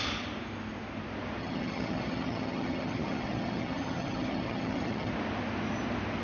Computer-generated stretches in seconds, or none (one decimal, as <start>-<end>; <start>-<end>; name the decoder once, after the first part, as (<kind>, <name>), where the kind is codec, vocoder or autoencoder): 1.4-5.1 (vocoder, HiFi-GAN)